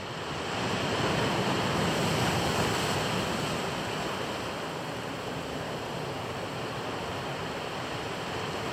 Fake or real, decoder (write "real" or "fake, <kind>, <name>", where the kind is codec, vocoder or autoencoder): fake, vocoder, BigVGAN v2